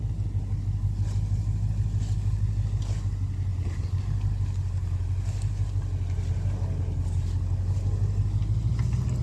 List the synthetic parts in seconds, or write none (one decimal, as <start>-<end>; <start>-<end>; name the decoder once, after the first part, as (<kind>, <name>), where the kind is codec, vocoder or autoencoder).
none